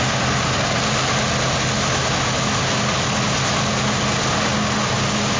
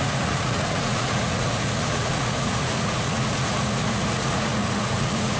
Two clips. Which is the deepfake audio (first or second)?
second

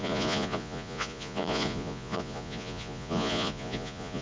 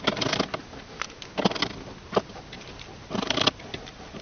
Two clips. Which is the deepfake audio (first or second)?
first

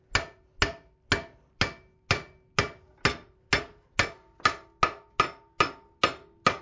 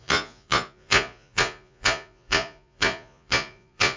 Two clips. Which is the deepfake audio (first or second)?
second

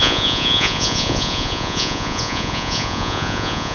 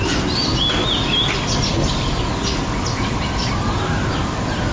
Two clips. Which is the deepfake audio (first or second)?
first